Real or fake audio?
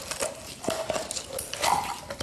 real